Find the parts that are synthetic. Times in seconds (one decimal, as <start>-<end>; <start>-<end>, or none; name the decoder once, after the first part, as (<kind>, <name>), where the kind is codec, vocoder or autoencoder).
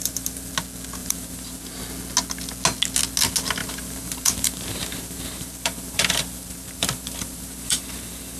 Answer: 0.0-0.5 (vocoder, BigVGAN v2); 1.0-1.8; 3.6-8.4